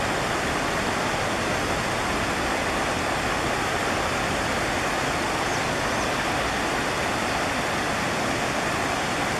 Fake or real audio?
real